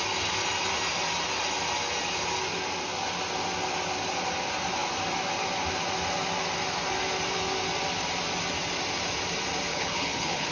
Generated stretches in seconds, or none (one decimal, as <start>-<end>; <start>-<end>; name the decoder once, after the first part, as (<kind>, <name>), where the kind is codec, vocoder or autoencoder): 9.7-10.5 (codec, HILCodec)